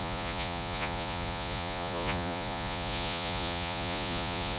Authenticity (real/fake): fake